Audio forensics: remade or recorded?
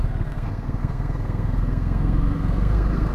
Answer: remade